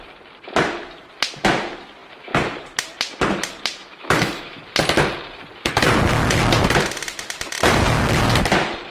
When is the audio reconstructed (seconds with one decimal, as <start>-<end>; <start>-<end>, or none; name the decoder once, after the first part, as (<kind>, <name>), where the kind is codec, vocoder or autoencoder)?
3.8-4.6 (autoencoder, DAC-VAE)